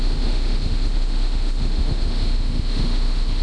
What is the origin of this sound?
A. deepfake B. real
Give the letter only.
A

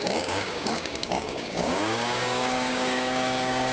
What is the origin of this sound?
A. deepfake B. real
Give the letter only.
A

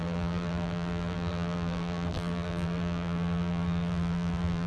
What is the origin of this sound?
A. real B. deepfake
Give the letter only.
B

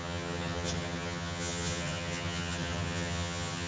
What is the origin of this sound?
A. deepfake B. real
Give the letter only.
A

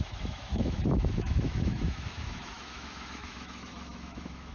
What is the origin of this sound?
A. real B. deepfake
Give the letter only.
B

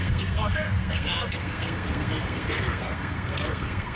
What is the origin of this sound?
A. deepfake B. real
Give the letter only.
A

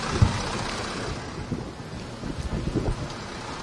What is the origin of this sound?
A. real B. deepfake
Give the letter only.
A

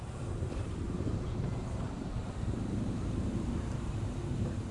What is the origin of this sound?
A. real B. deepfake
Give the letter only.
B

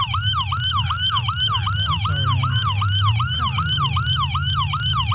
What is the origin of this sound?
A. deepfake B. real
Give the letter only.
B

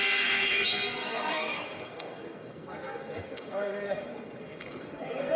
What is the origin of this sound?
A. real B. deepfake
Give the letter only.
B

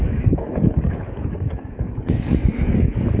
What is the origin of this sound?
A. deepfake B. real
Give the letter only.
A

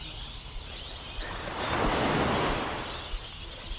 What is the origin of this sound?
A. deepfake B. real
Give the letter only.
B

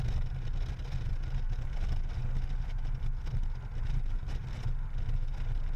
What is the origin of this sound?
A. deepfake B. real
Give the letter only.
B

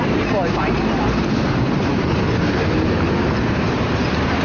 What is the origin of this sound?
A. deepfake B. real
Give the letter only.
A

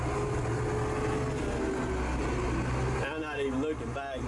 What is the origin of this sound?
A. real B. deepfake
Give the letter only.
A